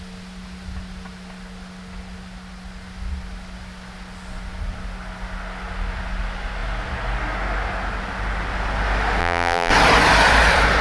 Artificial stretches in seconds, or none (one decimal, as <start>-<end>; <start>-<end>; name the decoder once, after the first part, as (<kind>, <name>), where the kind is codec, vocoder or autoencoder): 9.2-9.7 (vocoder, BigVGAN v2)